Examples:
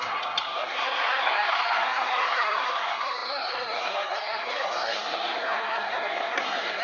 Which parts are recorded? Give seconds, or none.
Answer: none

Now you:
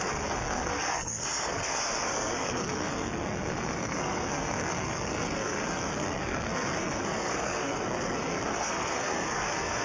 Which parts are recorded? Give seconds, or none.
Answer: none

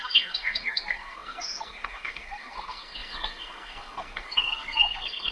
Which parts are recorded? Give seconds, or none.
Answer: none